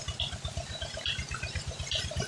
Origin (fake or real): fake